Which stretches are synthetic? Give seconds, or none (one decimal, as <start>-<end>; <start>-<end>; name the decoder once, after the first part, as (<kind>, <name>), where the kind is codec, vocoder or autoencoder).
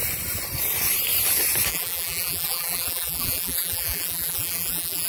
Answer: 1.7-5.1 (vocoder, BigVGAN v2)